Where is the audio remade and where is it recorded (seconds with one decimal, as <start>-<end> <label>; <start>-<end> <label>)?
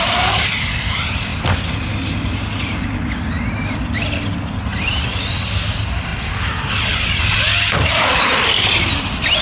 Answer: 0.0-4.7 recorded; 4.7-5.6 remade; 5.6-6.1 recorded; 6.1-8.9 remade; 8.9-9.4 recorded